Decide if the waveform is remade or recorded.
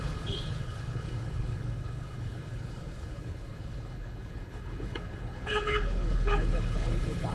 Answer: remade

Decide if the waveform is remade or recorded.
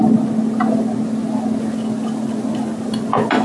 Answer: recorded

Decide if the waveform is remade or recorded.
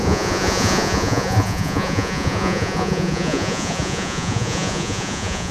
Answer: remade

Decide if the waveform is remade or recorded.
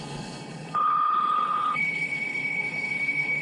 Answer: remade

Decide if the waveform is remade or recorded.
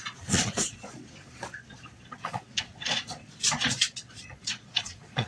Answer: remade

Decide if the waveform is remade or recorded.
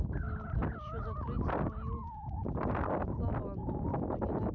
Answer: recorded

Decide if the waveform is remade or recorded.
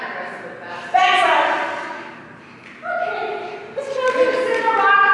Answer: recorded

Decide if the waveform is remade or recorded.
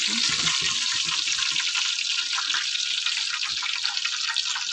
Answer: recorded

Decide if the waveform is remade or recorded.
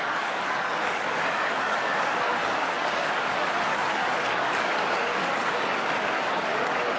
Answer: remade